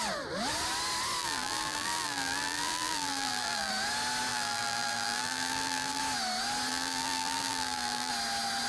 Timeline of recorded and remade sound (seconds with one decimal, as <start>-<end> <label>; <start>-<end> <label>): 0.0-1.2 recorded; 1.2-3.7 remade; 3.7-4.3 recorded; 4.3-6.0 remade; 6.0-6.7 recorded; 6.7-8.1 remade; 8.1-8.7 recorded